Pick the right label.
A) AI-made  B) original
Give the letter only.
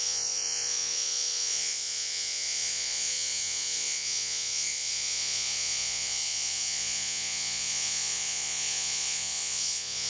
A